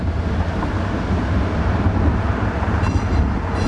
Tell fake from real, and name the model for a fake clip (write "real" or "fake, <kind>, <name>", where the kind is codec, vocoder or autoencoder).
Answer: real